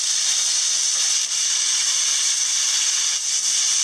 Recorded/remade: recorded